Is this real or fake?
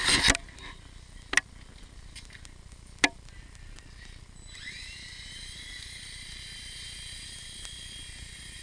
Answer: real